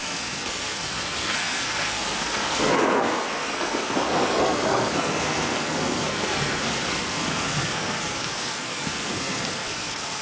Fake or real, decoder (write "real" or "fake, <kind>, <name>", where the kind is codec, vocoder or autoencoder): fake, codec, SNAC